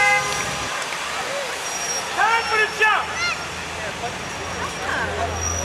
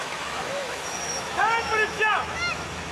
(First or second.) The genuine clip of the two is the first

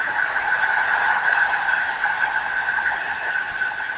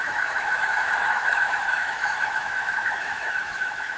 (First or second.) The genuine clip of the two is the first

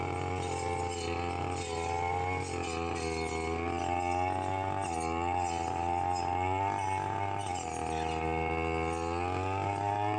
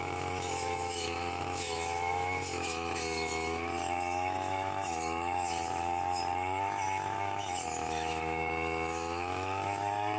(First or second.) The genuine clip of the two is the first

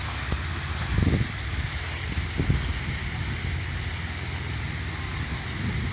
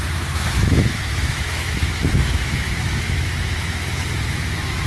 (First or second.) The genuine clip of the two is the first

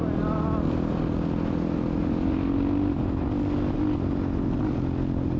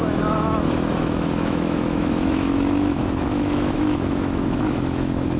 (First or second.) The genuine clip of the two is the first